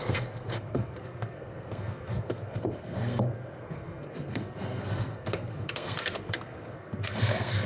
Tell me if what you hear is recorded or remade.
remade